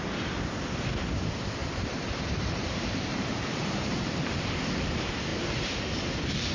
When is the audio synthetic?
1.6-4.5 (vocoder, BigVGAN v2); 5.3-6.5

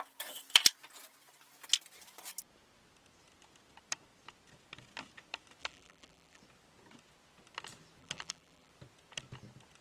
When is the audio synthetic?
5.6-6.4 (vocoder, BigVGAN v2); 8.0-8.7

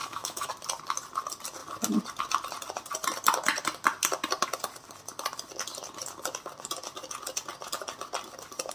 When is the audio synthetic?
0.0-0.5 (autoencoder, DAC-VAE)

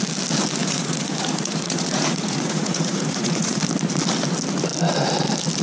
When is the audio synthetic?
0.6-3.6 (vocoder, Vocos)

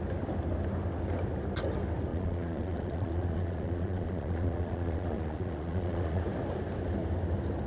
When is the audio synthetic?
2.1-6.2 (vocoder, Vocos)

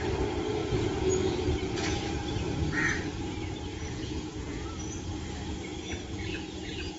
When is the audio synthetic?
0.6-2.1 (vocoder, Vocos); 3.7-4.7; 5.7-7.0